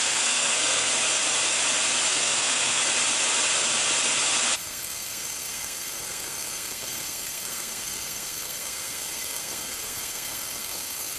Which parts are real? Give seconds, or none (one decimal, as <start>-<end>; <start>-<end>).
0.9-2.1; 2.8-4.6